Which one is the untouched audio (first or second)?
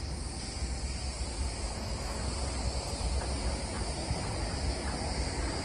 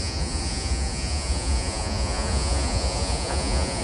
first